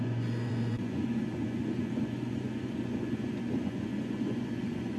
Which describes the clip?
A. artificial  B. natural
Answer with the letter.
A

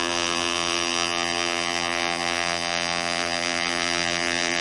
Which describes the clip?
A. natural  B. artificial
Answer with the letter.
B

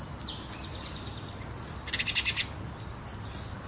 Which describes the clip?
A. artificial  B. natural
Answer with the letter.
B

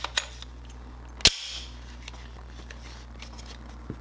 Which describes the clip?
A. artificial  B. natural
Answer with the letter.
B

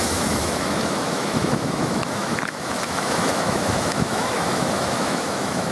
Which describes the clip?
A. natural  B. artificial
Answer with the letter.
B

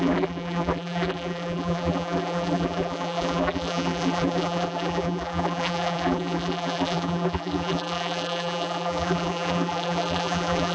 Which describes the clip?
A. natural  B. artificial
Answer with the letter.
B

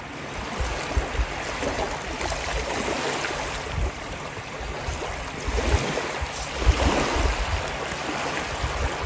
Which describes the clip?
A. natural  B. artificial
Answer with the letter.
A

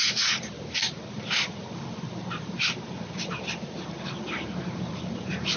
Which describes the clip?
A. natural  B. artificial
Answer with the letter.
B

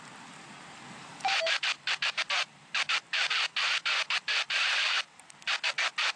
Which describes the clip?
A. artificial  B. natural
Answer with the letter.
A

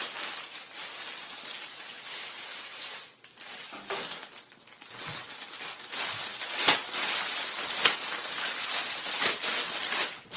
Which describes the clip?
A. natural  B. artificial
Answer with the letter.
A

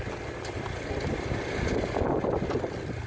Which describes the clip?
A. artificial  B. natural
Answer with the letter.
B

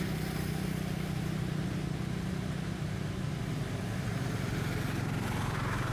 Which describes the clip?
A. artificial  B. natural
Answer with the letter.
B